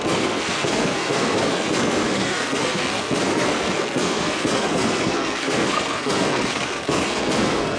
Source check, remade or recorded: remade